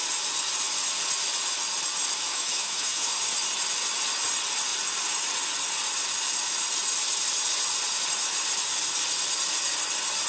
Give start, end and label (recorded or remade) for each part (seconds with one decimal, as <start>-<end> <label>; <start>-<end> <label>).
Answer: 0.0-2.3 recorded; 2.3-3.1 remade; 3.1-10.3 recorded